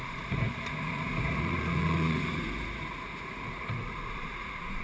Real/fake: fake